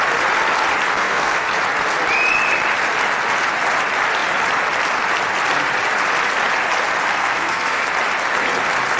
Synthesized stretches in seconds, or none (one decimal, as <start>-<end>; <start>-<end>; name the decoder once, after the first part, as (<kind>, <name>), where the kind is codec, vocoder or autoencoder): 0.9-1.5 (codec, SNAC); 7.1-7.8